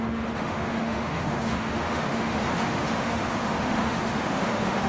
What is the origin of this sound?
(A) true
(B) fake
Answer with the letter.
B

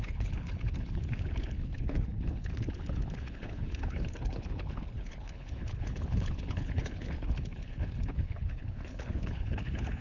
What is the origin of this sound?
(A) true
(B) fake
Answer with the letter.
B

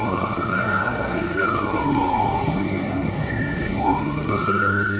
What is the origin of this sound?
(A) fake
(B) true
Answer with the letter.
A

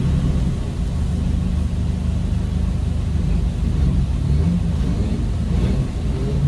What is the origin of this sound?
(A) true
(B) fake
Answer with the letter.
A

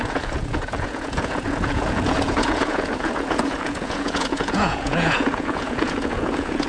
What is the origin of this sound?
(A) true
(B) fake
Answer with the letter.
B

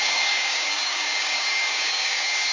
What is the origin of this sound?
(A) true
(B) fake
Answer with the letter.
B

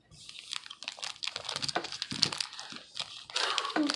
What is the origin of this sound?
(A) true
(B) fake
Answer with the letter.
A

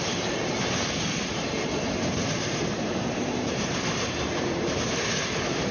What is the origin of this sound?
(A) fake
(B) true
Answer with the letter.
A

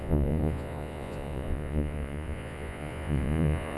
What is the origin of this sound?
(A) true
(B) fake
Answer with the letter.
B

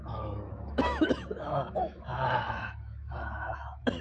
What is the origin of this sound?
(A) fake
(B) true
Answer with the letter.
A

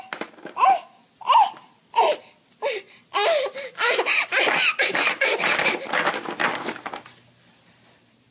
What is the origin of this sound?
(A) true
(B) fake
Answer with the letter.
A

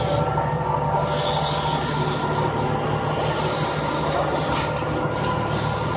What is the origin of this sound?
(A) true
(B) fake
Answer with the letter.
A